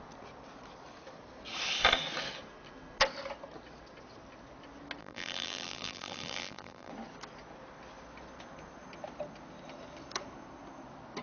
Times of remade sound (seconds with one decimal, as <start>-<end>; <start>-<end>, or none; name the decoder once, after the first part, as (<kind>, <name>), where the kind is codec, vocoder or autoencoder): 5.0-6.9 (vocoder, BigVGAN v2)